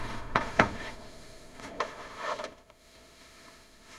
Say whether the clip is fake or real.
fake